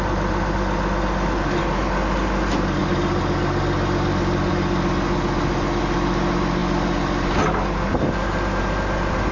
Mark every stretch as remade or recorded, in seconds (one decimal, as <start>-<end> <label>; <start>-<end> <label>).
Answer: 0.0-9.3 recorded